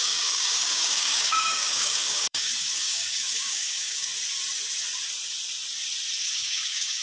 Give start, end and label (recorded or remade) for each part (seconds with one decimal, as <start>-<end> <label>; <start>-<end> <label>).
0.0-4.1 remade; 4.1-6.2 recorded; 6.2-7.0 remade